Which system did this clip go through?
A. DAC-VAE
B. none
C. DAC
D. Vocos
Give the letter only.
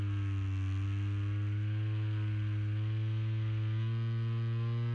B